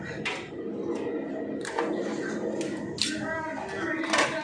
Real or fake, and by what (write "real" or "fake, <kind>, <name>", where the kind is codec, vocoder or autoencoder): real